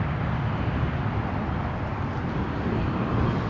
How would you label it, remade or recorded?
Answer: recorded